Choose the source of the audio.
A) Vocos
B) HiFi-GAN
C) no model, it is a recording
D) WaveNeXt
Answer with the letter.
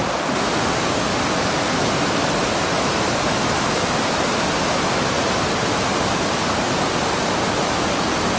C